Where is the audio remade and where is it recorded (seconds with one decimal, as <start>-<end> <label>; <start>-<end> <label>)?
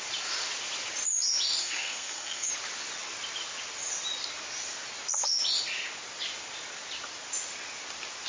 0.0-1.6 recorded; 1.6-2.5 remade; 2.5-8.3 recorded